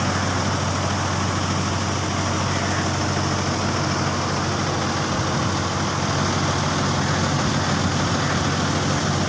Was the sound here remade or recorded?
recorded